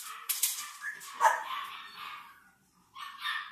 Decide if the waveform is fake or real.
fake